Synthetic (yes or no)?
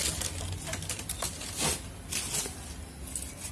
no